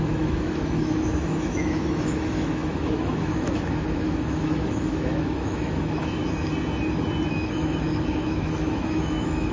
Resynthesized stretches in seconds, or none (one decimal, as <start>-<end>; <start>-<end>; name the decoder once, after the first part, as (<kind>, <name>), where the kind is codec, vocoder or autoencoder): 0.0-6.2 (autoencoder, DAC-VAE); 7.3-9.5